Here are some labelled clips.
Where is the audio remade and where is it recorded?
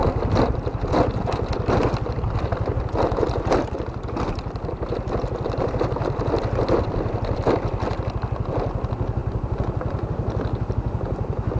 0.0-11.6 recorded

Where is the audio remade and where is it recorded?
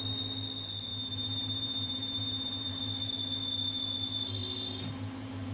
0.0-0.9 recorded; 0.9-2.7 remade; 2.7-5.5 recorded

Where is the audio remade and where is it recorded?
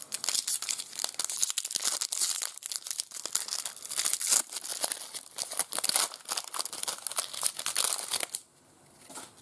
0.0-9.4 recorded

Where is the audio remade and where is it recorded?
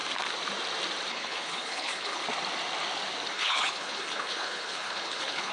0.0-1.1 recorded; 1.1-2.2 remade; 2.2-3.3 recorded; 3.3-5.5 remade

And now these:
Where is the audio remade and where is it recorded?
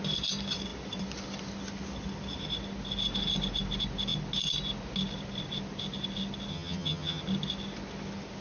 0.0-6.5 recorded; 6.5-7.2 remade; 7.2-8.4 recorded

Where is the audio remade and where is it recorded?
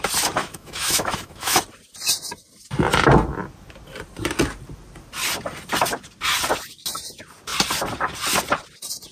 0.0-0.4 recorded; 0.4-1.6 remade; 1.6-9.1 recorded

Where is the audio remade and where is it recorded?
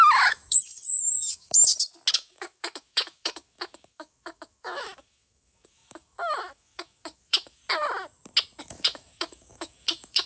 0.0-1.6 remade; 1.6-2.1 recorded; 2.1-7.6 remade; 7.6-8.6 recorded; 8.6-10.3 remade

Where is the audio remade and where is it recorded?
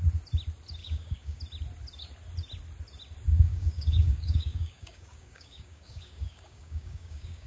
0.0-0.8 recorded; 0.8-1.4 remade; 1.4-3.3 recorded; 3.3-7.5 remade